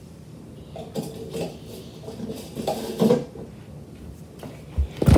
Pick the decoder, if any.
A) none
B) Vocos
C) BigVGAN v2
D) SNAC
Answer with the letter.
A